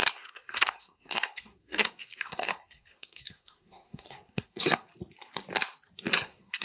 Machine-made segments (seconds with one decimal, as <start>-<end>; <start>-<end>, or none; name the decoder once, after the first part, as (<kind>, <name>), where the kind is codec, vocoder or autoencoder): 0.0-4.9 (codec, SNAC); 6.1-6.6